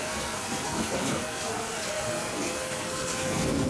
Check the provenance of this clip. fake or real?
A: fake